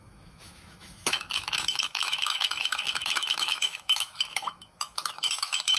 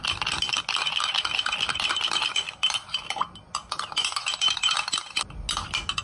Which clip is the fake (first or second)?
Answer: first